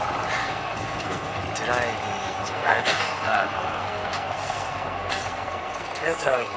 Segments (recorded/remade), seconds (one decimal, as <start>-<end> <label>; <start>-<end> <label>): 0.0-0.4 recorded; 0.4-1.4 remade; 1.4-2.2 recorded; 2.2-6.6 remade

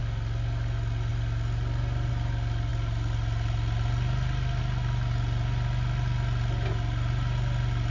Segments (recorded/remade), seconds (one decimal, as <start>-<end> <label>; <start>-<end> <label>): 0.0-7.9 recorded

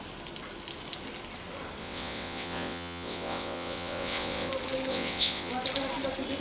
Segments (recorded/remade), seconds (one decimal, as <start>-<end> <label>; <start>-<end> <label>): 0.0-1.8 recorded; 1.8-4.5 remade; 4.5-4.9 recorded; 4.9-5.5 remade; 5.5-6.4 recorded

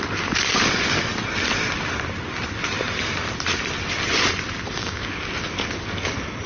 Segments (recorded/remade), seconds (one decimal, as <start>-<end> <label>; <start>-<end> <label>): 0.0-4.8 recorded; 4.8-5.3 remade; 5.3-6.5 recorded

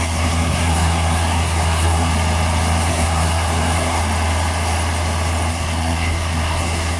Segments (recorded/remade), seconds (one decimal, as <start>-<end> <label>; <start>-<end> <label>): 0.0-2.1 remade; 2.1-2.9 recorded; 2.9-4.0 remade; 4.0-5.5 recorded; 5.5-7.0 remade

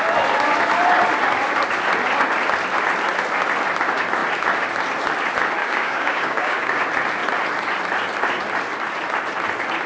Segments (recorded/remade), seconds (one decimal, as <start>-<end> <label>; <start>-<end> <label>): 0.0-5.6 recorded; 5.6-6.8 remade; 6.8-9.9 recorded